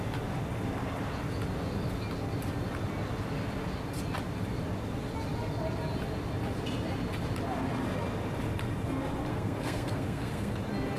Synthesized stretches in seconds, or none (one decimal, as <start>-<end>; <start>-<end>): 9.3-10.6